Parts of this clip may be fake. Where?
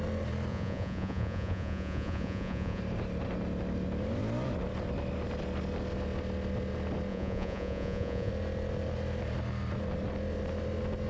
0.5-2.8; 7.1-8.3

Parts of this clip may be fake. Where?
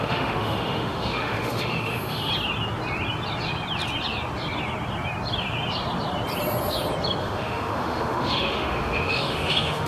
0.0-2.3; 7.2-9.9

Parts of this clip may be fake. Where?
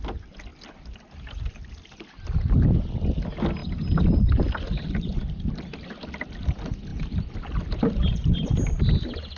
0.5-1.5; 3.6-6.0; 6.9-8.3